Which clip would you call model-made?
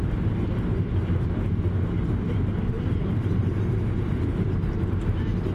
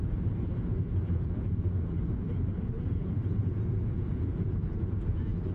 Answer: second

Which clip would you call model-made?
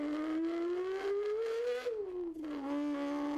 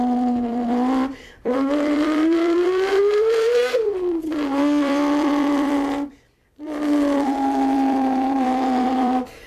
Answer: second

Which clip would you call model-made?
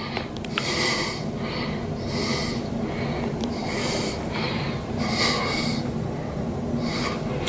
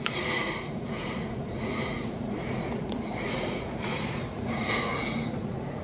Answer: second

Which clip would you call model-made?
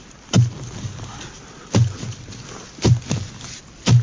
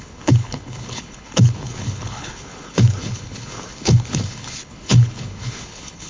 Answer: second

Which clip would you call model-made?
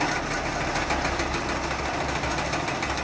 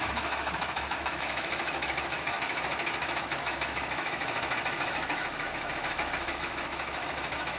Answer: second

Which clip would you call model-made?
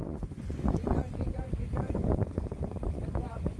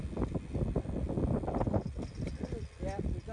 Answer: first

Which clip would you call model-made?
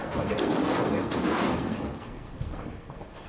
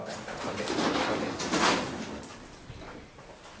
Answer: first